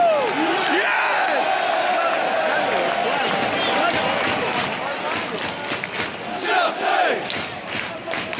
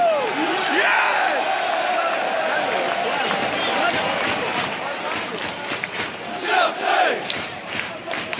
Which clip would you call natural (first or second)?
first